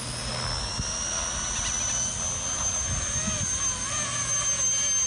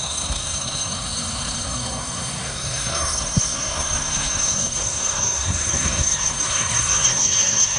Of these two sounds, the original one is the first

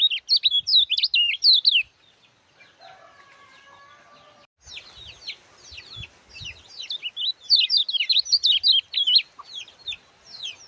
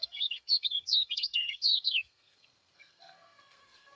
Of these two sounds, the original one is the first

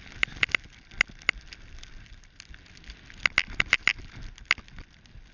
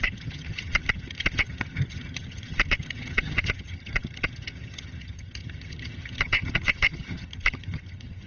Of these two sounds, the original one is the first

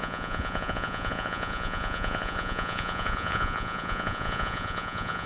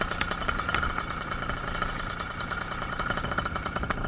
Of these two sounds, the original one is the second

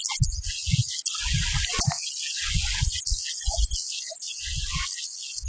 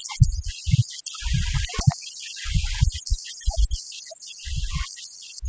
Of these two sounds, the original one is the first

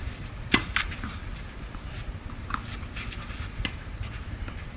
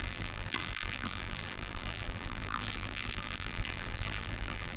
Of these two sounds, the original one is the first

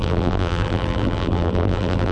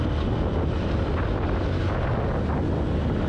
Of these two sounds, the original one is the second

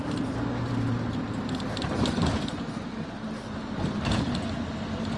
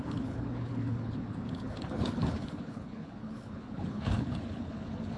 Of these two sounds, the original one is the first